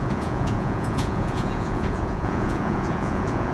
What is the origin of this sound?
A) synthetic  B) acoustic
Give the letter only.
A